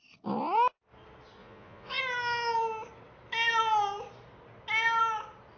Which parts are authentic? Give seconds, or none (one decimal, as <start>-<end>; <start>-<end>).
0.0-1.4; 2.0-5.6